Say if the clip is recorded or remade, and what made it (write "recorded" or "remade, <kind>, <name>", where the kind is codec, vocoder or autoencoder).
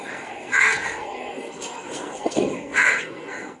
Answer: remade, codec, SNAC